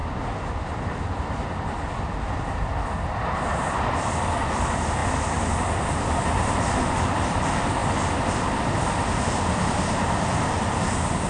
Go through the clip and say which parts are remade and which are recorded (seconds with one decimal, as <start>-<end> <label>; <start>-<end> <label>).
0.0-5.0 remade; 5.0-5.5 recorded; 5.5-7.8 remade; 7.8-9.4 recorded; 9.4-11.3 remade